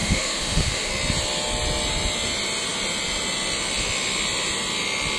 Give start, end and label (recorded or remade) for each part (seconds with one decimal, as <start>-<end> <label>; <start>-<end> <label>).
0.0-0.9 remade; 0.9-5.2 recorded

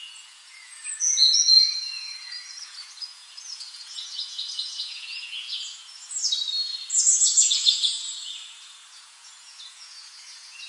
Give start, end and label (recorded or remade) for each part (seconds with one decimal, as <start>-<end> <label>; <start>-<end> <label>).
0.0-6.2 remade; 6.2-6.9 recorded; 6.9-10.7 remade

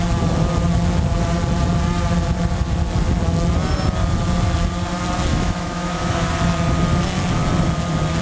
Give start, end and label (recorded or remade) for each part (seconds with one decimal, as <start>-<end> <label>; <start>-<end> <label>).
0.0-5.3 recorded; 5.3-6.3 remade; 6.3-8.2 recorded

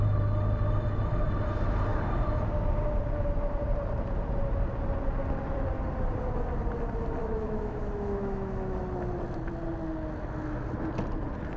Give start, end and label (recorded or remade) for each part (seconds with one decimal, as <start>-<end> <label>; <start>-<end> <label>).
0.0-7.2 recorded; 7.2-8.8 remade; 8.8-11.6 recorded

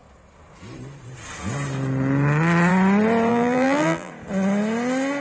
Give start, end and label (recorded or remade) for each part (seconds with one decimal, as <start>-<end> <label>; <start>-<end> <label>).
0.0-3.3 recorded; 3.3-4.1 remade; 4.1-5.2 recorded

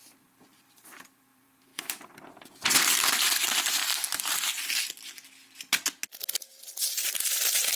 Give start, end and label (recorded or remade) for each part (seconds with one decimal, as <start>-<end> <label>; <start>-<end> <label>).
0.0-1.7 remade; 1.7-3.1 recorded; 3.1-3.8 remade; 3.8-6.3 recorded; 6.3-7.8 remade

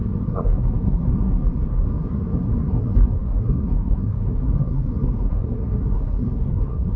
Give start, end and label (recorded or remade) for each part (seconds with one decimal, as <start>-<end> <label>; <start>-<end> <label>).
0.0-7.0 remade